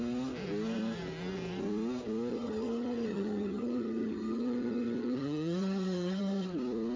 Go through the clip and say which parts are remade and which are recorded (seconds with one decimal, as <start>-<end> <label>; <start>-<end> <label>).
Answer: 0.0-2.3 recorded; 2.3-6.5 remade; 6.5-7.0 recorded